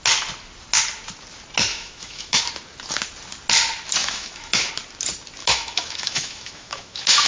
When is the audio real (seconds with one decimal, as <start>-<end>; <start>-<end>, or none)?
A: 0.0-1.7; 2.4-4.0; 4.7-5.4